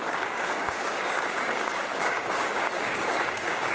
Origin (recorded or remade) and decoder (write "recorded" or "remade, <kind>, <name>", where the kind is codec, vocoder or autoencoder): remade, codec, DAC